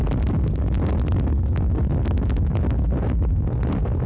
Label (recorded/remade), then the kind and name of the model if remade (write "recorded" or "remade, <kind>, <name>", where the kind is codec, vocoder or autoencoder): recorded